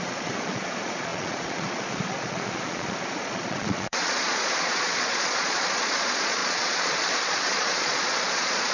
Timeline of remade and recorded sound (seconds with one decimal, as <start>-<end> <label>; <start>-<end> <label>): 0.0-8.7 remade